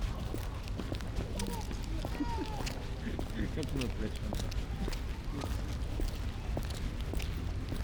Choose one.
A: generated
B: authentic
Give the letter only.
B